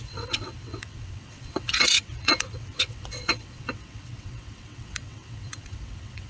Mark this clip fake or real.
fake